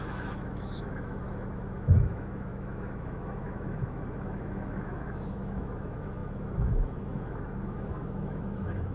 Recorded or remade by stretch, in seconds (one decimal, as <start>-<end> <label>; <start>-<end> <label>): 0.0-8.9 remade